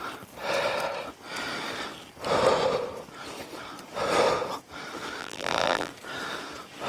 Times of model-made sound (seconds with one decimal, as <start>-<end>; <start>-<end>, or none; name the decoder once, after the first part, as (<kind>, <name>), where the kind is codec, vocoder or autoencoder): 5.2-5.9 (vocoder, BigVGAN v2)